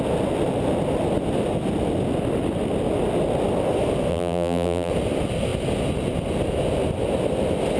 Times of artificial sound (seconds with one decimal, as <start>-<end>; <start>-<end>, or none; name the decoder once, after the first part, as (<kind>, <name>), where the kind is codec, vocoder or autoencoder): 4.1-4.9 (vocoder, BigVGAN v2)